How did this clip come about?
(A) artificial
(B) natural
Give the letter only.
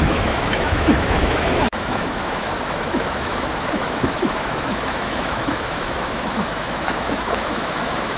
A